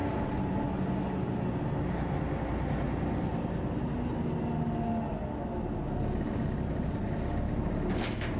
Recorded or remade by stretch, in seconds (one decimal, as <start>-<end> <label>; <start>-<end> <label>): 0.0-8.4 recorded